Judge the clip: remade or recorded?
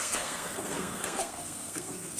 remade